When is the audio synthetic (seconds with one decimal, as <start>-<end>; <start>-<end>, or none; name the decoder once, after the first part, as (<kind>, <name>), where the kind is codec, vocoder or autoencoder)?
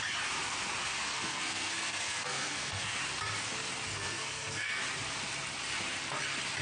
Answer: 0.8-3.0 (codec, SNAC); 3.9-4.8